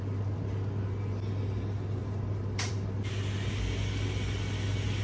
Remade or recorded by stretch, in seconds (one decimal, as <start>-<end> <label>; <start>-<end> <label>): 0.0-5.0 recorded